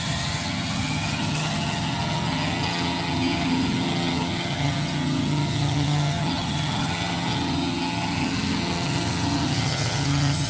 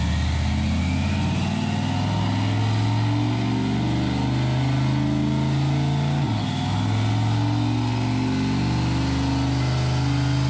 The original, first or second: second